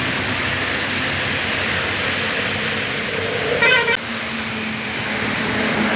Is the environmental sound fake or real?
real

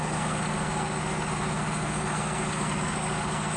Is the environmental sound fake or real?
fake